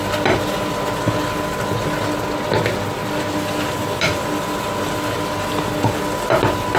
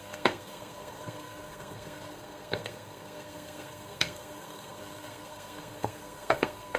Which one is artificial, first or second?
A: second